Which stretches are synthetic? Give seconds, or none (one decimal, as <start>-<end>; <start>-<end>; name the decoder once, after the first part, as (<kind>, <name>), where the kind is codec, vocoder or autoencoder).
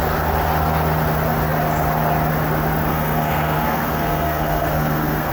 2.9-5.3 (codec, SNAC)